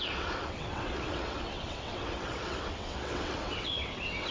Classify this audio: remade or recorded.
remade